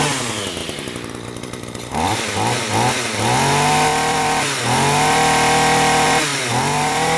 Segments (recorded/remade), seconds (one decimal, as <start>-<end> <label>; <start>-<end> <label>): 0.0-0.6 recorded; 0.6-2.6 remade; 2.6-3.9 recorded; 3.9-4.6 remade; 4.6-6.3 recorded; 6.3-7.2 remade